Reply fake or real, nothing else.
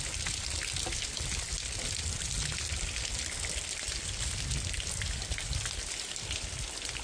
real